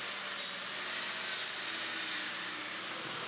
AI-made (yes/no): no